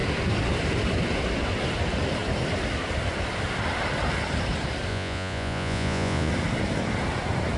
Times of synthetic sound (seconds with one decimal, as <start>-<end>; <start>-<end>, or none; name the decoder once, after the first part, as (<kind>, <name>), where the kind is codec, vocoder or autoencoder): 4.9-6.3 (vocoder, Vocos)